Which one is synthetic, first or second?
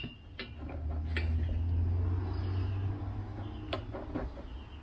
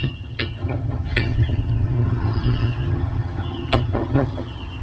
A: second